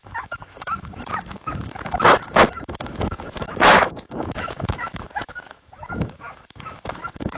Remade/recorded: remade